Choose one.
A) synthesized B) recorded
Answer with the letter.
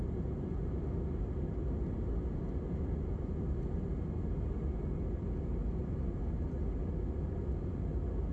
B